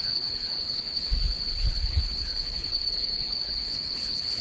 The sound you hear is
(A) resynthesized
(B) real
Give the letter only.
A